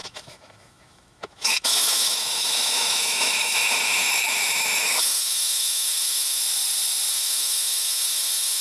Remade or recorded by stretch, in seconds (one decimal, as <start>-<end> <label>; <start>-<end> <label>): 0.0-6.4 remade; 6.4-7.1 recorded; 7.1-8.6 remade